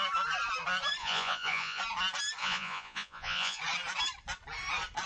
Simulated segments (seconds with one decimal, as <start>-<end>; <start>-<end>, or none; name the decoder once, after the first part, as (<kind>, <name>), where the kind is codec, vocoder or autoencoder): 1.0-1.8 (vocoder, Vocos); 2.4-3.6